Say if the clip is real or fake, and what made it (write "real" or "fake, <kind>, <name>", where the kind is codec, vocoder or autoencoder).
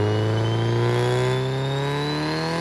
real